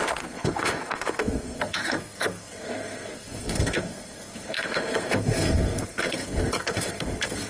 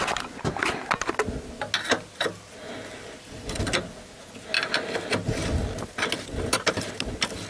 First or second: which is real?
second